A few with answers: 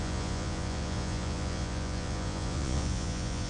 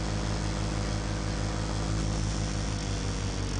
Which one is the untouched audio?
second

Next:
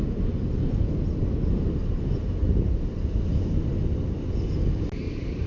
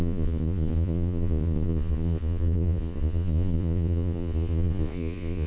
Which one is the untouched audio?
first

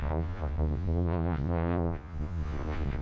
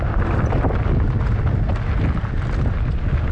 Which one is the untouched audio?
second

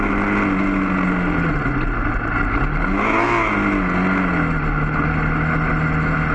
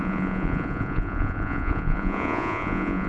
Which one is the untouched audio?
first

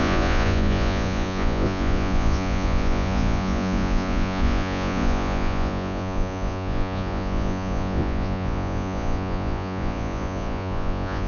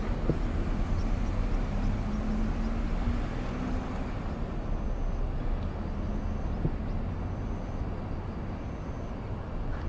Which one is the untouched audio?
second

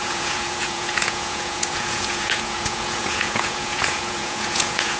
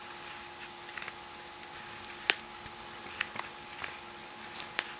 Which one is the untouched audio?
second